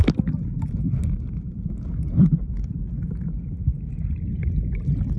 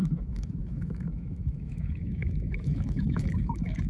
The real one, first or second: first